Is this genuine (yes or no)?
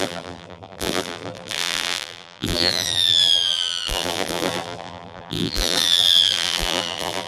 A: no